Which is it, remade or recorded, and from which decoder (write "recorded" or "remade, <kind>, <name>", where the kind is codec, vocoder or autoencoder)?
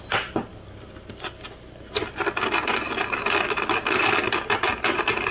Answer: recorded